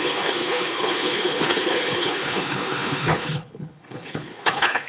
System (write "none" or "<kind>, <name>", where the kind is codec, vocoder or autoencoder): codec, HILCodec